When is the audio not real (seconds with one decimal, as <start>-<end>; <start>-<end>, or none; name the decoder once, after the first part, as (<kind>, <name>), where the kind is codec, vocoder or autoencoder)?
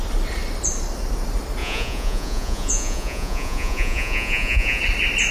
1.6-4.8 (vocoder, Vocos)